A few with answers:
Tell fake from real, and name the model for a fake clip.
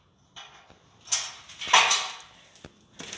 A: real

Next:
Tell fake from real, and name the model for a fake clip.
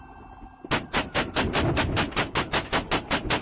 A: real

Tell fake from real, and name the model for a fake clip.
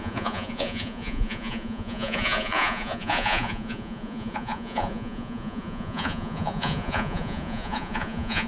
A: fake, vocoder, Vocos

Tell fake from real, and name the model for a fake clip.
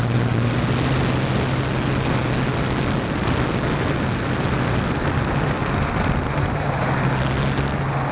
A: real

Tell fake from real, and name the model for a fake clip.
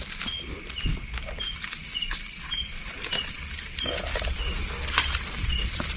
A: real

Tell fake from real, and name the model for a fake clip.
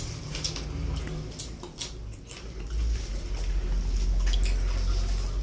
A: real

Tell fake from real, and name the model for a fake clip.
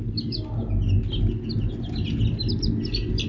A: real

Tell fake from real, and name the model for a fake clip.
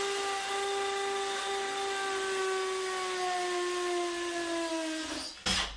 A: real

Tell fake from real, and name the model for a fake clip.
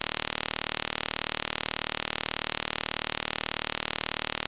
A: real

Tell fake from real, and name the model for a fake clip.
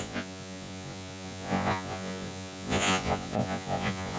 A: fake, vocoder, Vocos